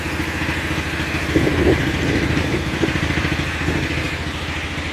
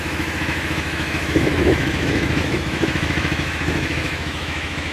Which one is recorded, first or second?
first